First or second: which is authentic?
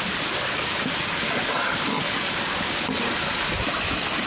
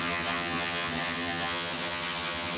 first